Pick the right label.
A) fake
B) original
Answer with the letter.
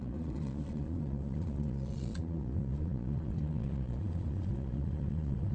A